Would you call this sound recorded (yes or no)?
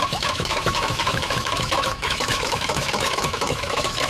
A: no